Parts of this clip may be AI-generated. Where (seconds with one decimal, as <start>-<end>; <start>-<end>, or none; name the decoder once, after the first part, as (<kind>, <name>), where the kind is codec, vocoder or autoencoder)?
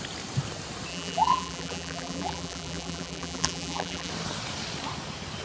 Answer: 0.9-4.1 (vocoder, BigVGAN v2)